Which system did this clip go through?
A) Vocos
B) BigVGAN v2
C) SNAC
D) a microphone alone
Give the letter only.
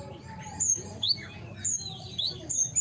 B